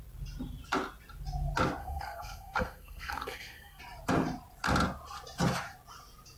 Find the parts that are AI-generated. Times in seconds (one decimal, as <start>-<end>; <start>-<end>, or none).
1.8-3.8